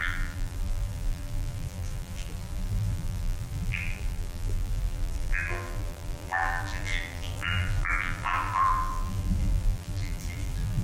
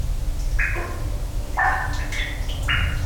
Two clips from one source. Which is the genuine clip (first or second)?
second